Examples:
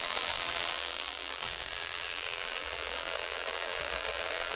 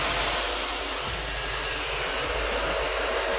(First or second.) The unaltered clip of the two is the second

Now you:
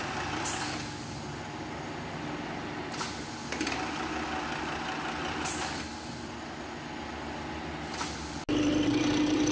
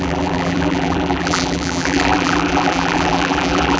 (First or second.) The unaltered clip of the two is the first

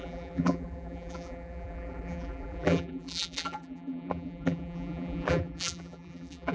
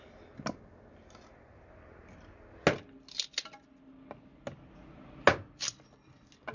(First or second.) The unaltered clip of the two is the second